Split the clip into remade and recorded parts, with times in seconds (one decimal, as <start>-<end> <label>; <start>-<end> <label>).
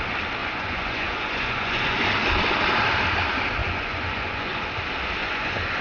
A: 0.0-0.4 recorded; 0.4-2.0 remade; 2.0-3.6 recorded; 3.6-4.6 remade; 4.6-5.2 recorded; 5.2-5.8 remade